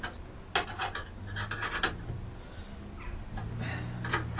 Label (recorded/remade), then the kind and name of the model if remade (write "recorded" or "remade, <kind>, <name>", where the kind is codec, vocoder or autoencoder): recorded